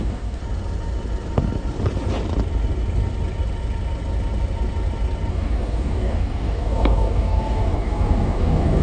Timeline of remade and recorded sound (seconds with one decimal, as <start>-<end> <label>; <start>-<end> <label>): 0.0-0.4 remade; 0.4-5.3 recorded; 5.3-8.8 remade